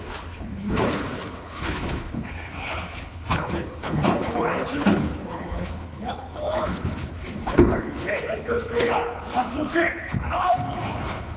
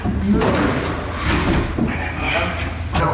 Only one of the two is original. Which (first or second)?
second